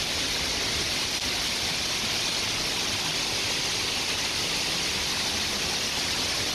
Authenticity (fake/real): real